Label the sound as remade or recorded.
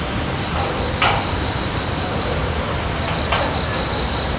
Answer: recorded